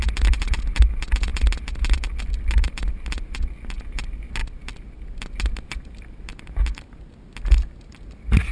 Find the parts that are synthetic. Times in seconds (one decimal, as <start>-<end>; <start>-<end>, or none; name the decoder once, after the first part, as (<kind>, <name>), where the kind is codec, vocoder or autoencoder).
none